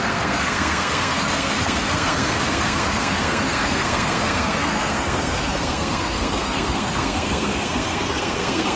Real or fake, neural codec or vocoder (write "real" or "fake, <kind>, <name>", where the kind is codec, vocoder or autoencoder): fake, codec, SNAC